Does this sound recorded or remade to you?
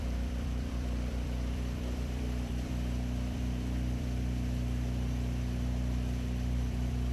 remade